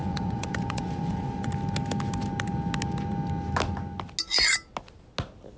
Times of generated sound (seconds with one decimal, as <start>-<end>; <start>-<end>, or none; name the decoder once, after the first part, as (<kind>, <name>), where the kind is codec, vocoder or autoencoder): 0.0-1.5 (vocoder, Vocos)